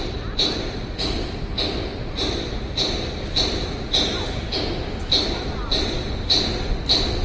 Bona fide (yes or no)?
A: yes